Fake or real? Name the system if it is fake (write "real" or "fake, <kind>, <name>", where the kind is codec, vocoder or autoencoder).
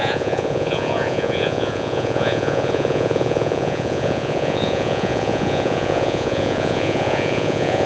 fake, vocoder, Vocos